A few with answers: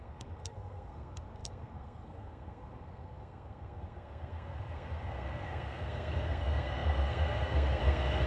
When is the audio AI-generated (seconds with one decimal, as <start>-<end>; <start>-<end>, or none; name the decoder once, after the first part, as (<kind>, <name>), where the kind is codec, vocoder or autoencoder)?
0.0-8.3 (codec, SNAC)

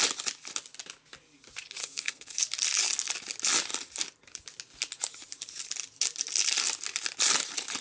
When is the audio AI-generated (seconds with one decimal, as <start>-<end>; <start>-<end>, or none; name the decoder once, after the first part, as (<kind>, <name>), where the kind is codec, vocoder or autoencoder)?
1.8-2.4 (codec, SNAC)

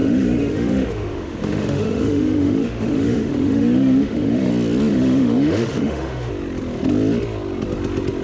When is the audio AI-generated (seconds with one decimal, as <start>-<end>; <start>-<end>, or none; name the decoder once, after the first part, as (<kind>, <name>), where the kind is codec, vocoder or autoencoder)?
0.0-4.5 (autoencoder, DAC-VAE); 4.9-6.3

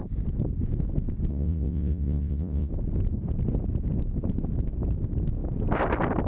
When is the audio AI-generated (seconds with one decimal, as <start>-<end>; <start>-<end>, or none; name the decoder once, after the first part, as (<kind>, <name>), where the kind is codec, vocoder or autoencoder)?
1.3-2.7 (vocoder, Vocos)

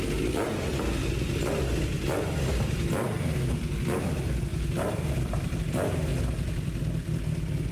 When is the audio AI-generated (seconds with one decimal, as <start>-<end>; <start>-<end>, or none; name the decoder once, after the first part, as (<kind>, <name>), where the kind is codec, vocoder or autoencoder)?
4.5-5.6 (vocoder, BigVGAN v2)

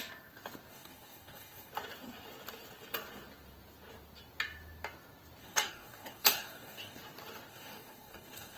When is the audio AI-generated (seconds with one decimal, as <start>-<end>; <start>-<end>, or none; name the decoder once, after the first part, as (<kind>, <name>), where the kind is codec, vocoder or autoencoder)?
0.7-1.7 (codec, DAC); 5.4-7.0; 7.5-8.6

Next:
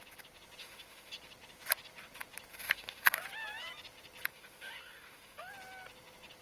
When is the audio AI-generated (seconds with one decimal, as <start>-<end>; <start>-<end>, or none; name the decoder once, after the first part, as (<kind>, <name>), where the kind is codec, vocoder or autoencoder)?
0.6-1.1 (autoencoder, DAC-VAE); 2.5-3.2; 4.3-5.5

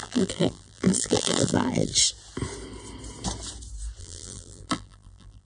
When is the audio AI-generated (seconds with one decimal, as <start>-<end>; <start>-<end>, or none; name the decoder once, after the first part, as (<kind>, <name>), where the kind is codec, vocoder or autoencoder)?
0.0-1.9 (vocoder, BigVGAN v2); 4.0-5.5